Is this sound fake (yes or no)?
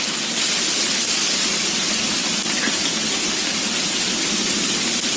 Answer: no